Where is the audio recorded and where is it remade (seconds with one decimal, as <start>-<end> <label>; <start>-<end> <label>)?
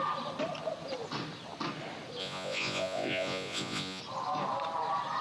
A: 0.0-2.2 recorded; 2.2-4.0 remade; 4.0-5.2 recorded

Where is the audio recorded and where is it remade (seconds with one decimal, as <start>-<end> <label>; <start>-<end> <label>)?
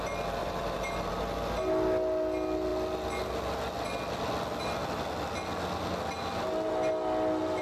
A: 0.0-0.4 recorded; 0.4-1.1 remade; 1.1-7.6 recorded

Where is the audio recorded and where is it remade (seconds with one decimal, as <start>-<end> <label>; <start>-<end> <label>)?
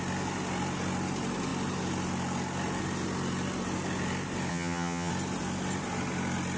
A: 0.0-4.5 recorded; 4.5-5.1 remade; 5.1-6.6 recorded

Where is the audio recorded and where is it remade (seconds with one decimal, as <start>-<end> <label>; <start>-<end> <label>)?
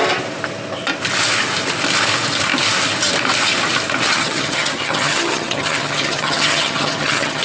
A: 0.0-4.1 recorded; 4.1-7.4 remade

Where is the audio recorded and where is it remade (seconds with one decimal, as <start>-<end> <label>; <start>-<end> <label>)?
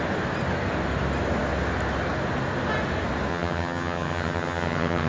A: 0.0-3.3 recorded; 3.3-5.1 remade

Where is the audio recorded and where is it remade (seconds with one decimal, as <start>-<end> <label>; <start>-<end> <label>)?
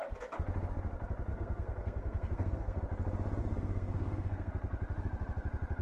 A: 0.0-1.3 recorded; 1.3-2.8 remade; 2.8-3.4 recorded; 3.4-4.5 remade; 4.5-5.8 recorded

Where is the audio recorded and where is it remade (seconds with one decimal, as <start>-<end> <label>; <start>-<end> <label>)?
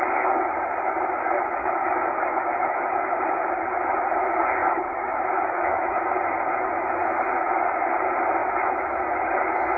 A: 0.0-1.6 recorded; 1.6-3.0 remade; 3.0-4.6 recorded; 4.6-6.0 remade; 6.0-9.8 recorded